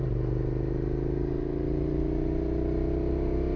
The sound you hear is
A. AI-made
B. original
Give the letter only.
B